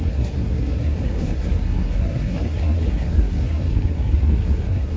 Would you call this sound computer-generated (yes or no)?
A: yes